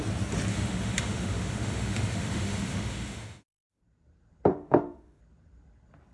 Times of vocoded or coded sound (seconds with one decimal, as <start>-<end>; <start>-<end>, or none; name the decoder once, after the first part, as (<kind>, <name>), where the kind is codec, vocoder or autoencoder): 0.5-3.8 (autoencoder, DAC-VAE); 4.5-5.2